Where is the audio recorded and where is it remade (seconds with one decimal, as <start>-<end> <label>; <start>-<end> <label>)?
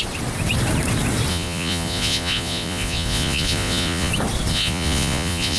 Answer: 0.0-1.3 recorded; 1.3-4.1 remade; 4.1-4.5 recorded; 4.5-5.6 remade